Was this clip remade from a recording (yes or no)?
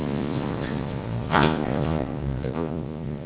yes